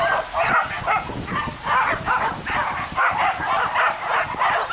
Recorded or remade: recorded